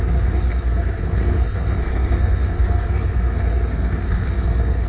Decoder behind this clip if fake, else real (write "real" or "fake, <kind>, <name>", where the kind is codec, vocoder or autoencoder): fake, codec, SNAC